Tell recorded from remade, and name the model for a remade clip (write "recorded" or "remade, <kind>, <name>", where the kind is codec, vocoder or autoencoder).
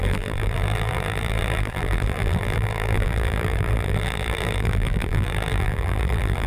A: remade, vocoder, BigVGAN v2